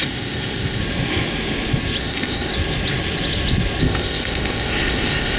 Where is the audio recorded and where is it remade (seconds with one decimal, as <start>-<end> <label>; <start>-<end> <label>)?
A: 0.0-0.8 remade; 0.8-2.0 recorded; 2.0-2.5 remade; 2.5-3.8 recorded; 3.8-5.4 remade